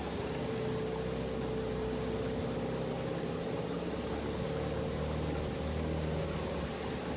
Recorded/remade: recorded